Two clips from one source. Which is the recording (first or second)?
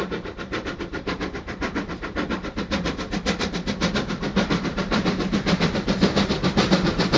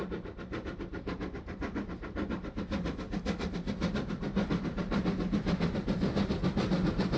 second